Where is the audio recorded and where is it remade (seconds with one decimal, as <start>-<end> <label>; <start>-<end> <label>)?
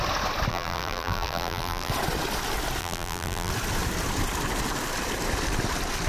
0.0-0.5 recorded; 0.5-1.9 remade; 1.9-2.8 recorded; 2.8-3.5 remade; 3.5-6.1 recorded